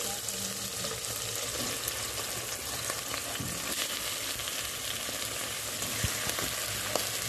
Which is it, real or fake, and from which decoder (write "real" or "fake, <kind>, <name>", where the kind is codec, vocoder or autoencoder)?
real